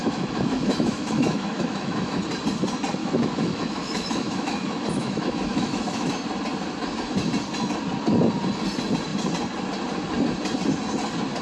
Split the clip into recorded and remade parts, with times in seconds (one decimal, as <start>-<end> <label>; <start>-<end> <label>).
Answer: 0.0-2.2 remade; 2.2-3.0 recorded; 3.0-6.1 remade; 6.1-11.4 recorded